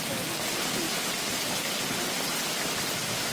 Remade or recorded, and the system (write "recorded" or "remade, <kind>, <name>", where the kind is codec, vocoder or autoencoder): recorded